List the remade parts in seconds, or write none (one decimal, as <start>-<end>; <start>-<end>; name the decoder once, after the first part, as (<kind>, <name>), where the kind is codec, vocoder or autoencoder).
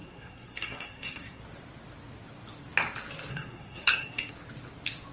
0.0-1.4 (codec, SNAC); 3.3-4.3